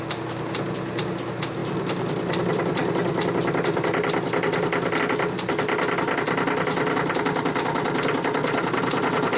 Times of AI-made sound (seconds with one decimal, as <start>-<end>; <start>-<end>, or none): 1.6-5.0